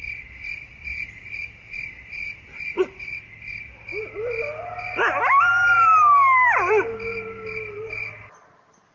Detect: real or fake real